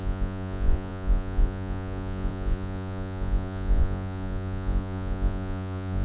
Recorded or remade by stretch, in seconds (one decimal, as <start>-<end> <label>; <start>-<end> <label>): 0.0-6.0 remade

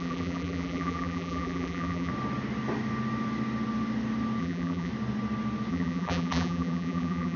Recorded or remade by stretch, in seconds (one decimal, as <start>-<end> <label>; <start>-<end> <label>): 0.0-2.1 remade; 2.1-4.4 recorded; 4.4-4.9 remade; 4.9-5.7 recorded; 5.7-7.4 remade

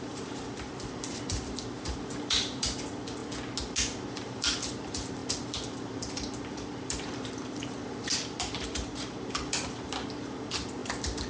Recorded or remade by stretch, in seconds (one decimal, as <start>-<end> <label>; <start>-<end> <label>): 0.0-3.2 remade; 3.2-4.1 recorded; 4.1-10.8 remade; 10.8-11.3 recorded

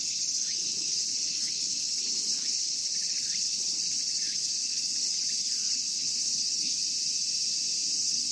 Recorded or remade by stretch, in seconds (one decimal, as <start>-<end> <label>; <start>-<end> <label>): 0.0-6.8 remade; 6.8-7.9 recorded; 7.9-8.3 remade

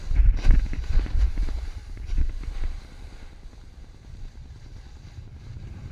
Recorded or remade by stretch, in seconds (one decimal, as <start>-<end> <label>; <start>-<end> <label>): 0.0-1.8 recorded; 1.8-5.3 remade; 5.3-5.9 recorded

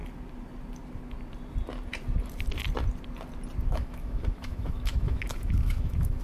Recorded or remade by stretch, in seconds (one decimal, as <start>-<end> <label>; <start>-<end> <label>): 0.0-3.7 recorded; 3.7-6.2 remade

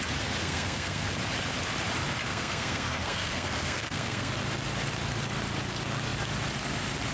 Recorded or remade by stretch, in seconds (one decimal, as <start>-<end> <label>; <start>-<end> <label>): 0.0-0.4 recorded; 0.4-1.1 remade; 1.1-2.3 recorded; 2.3-4.3 remade; 4.3-7.1 recorded

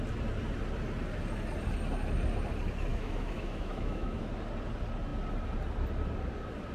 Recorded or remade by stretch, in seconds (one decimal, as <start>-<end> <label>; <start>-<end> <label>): 0.0-2.9 recorded; 2.9-4.3 remade; 4.3-6.7 recorded